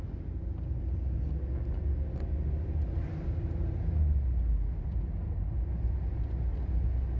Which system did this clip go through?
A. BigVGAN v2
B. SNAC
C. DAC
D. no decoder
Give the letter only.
D